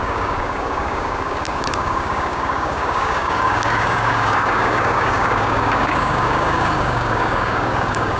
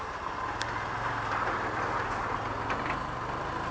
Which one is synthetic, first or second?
first